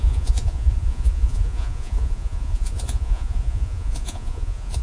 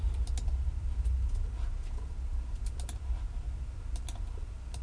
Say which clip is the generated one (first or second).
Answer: first